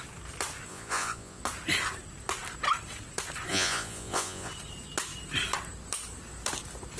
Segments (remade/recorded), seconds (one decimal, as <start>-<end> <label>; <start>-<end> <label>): 0.0-0.7 recorded; 0.7-1.4 remade; 1.4-3.5 recorded; 3.5-4.5 remade; 4.5-7.0 recorded